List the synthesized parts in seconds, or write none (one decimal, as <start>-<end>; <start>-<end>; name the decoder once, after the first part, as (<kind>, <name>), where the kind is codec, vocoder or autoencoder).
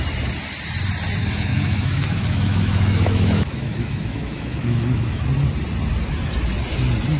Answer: 1.2-5.2 (autoencoder, DAC-VAE)